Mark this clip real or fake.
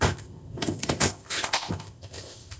fake